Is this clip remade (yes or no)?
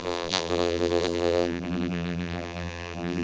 yes